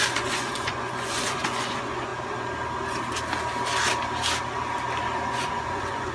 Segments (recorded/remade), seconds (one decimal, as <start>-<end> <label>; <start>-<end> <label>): 0.0-2.1 remade; 2.1-5.3 recorded; 5.3-6.1 remade